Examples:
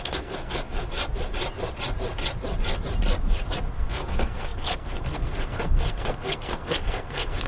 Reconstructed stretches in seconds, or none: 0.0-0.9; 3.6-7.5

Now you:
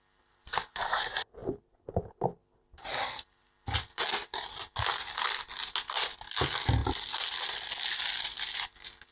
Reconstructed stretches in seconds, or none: none

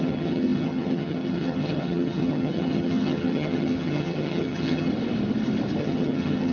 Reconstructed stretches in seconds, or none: 0.0-4.9; 5.8-6.5